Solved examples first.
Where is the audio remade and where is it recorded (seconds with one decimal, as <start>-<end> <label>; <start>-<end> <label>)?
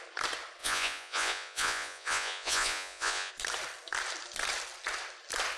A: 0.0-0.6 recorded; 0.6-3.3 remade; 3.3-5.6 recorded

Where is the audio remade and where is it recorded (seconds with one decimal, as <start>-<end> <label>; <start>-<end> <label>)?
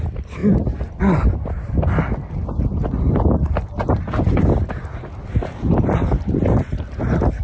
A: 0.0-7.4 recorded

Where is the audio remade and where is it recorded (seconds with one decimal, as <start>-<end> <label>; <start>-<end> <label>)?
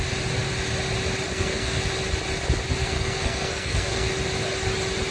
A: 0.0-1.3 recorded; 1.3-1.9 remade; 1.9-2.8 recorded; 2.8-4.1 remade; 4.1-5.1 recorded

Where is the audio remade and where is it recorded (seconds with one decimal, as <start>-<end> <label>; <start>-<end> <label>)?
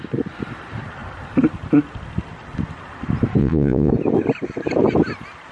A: 0.0-3.4 recorded; 3.4-3.9 remade; 3.9-5.5 recorded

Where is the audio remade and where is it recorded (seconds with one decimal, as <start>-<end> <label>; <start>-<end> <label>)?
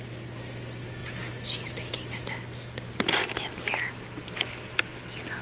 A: 0.0-5.4 recorded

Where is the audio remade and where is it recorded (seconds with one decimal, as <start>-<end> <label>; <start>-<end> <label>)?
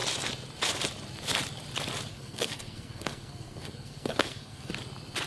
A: 0.0-2.1 recorded; 2.1-4.7 remade; 4.7-5.3 recorded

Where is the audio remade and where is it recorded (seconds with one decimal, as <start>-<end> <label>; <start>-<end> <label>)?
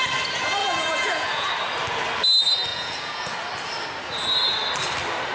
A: 0.0-0.6 recorded; 0.6-1.5 remade; 1.5-2.7 recorded; 2.7-3.3 remade; 3.3-5.3 recorded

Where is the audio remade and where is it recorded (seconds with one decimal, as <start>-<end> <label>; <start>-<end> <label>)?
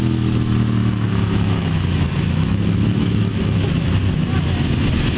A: 0.0-0.8 recorded; 0.8-3.9 remade; 3.9-5.2 recorded